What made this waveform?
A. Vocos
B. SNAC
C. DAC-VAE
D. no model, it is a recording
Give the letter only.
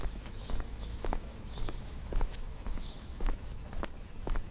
C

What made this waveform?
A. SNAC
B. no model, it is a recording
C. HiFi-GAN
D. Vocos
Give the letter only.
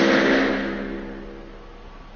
B